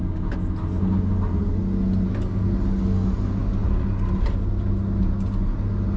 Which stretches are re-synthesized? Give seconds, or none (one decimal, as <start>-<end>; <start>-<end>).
none